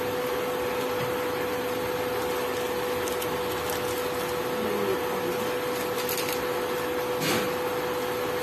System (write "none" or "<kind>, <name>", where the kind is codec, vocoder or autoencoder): none